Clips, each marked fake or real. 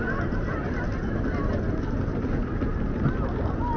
real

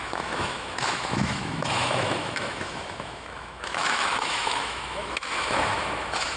fake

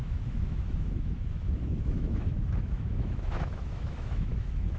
fake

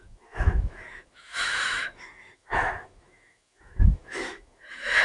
fake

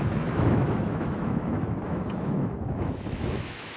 fake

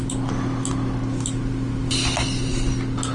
real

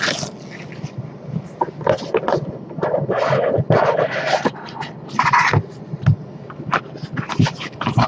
real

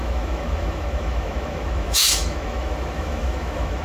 fake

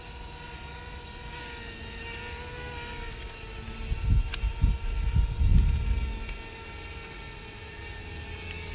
real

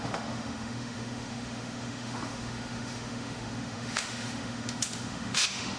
fake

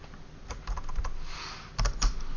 real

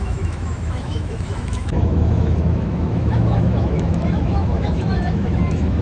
fake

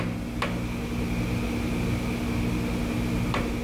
real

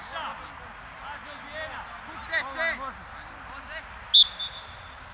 real